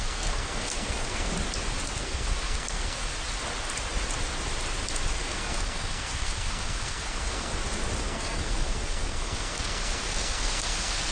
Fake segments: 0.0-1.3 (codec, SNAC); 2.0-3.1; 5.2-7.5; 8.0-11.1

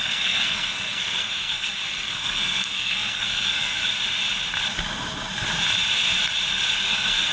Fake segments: 0.0-3.8 (codec, SNAC); 6.8-7.3